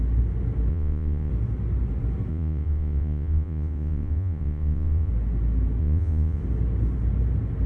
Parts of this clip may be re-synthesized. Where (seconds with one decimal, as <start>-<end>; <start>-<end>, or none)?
0.7-1.3; 2.3-5.1; 5.8-6.4